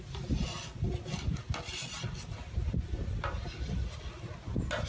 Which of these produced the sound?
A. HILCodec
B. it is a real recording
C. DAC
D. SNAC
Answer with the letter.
B